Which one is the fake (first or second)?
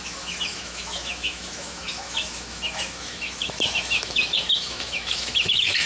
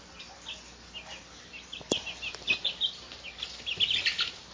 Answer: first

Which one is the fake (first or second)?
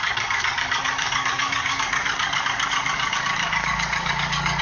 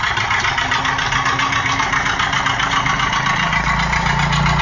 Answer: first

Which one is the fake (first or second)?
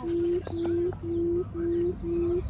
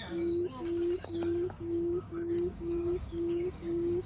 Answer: second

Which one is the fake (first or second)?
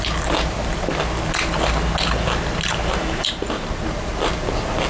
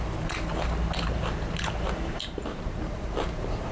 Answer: second